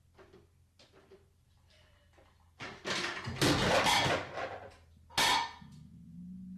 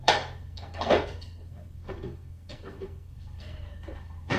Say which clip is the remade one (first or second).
second